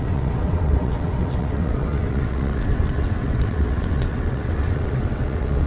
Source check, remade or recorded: remade